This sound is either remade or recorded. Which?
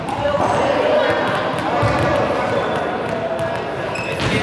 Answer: recorded